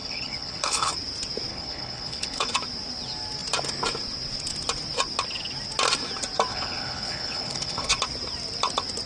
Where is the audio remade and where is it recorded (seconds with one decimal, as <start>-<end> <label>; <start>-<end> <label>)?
0.0-0.9 remade; 0.9-1.5 recorded; 1.5-2.5 remade; 2.5-6.5 recorded; 6.5-7.9 remade; 7.9-9.1 recorded